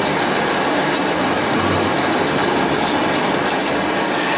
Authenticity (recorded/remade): recorded